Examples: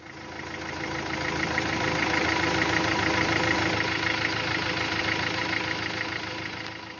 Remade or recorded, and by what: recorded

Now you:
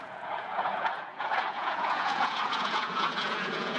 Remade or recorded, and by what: remade, vocoder, Vocos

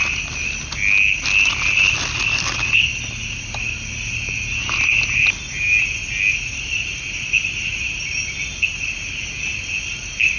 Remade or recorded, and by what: recorded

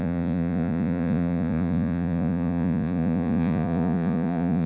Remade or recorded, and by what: remade, vocoder, Vocos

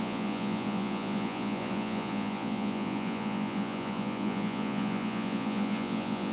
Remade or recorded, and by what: remade, vocoder, Vocos